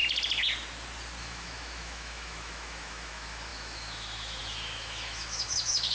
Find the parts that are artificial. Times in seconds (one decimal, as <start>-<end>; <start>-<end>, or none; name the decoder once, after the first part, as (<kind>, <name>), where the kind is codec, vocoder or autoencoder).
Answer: 1.2-5.9 (autoencoder, DAC-VAE)